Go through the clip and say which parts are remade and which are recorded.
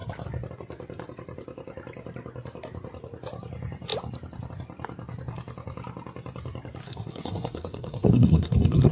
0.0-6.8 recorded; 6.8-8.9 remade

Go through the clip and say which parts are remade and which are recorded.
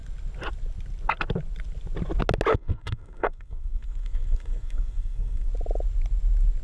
0.0-2.5 recorded; 2.5-5.5 remade; 5.5-6.6 recorded